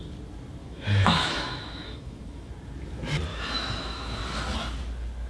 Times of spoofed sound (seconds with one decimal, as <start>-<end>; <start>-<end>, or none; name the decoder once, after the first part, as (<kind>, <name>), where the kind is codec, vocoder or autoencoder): 0.6-2.5 (autoencoder, DAC-VAE); 3.3-4.2